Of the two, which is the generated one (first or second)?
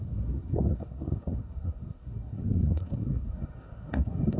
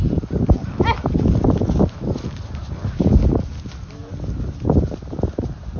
first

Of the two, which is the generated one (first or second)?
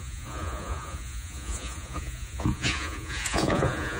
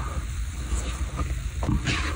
first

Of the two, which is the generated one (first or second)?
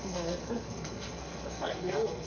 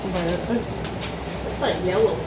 first